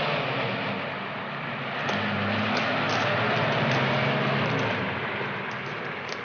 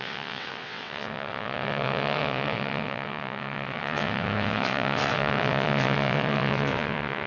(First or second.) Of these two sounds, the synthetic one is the second